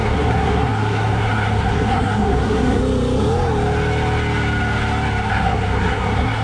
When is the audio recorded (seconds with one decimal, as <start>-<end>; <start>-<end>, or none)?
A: 2.8-5.3